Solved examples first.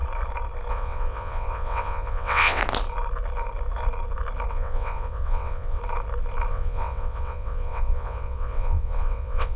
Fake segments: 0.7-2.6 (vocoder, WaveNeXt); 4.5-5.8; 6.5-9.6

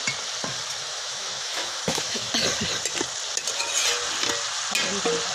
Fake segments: 0.9-2.3 (autoencoder, DAC-VAE)

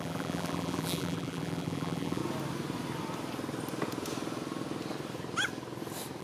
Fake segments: 0.0-2.2 (vocoder, BigVGAN v2)